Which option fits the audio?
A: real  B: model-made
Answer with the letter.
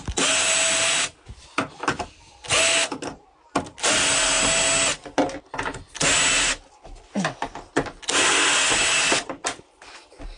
A